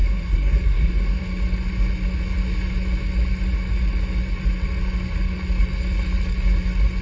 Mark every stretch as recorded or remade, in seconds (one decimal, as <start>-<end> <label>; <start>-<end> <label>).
0.0-1.2 remade; 1.2-7.0 recorded